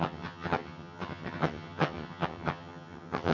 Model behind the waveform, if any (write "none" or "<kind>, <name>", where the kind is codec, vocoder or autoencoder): vocoder, HiFi-GAN